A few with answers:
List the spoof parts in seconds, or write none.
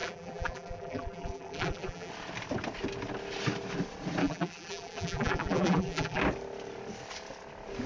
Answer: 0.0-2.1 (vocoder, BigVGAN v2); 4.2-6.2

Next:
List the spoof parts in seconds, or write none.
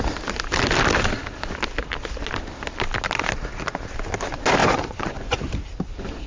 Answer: 4.6-5.4 (vocoder, Vocos)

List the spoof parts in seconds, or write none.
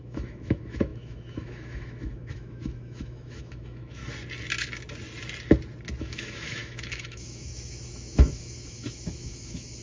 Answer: 0.0-4.0 (autoencoder, DAC-VAE); 6.0-9.8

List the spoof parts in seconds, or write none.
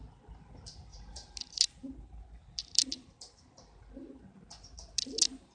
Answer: none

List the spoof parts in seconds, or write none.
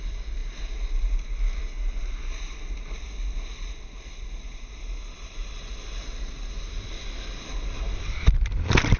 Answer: none